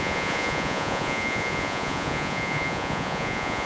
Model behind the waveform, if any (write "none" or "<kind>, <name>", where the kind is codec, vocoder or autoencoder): vocoder, Vocos